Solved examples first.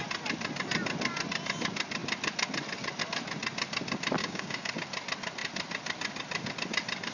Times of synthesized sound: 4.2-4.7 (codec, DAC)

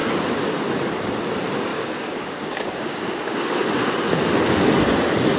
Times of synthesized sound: 1.7-3.7 (codec, DAC)

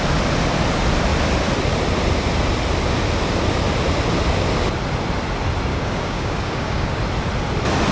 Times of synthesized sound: 5.7-7.0 (codec, DAC)

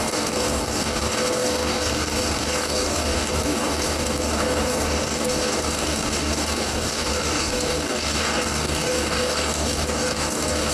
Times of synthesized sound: 0.0-10.7 (codec, DAC)

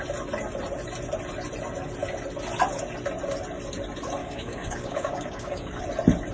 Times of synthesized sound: 4.2-5.8 (codec, DAC)

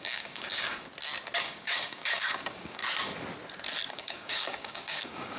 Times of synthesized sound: 0.0-0.9 (codec, DAC); 1.4-2.8; 3.9-5.4